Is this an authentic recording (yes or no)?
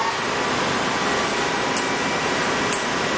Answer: yes